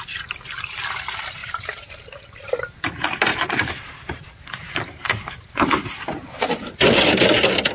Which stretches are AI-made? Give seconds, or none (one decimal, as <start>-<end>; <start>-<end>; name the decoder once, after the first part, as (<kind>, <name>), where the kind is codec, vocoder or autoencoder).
1.4-2.0 (vocoder, BigVGAN v2); 3.3-6.5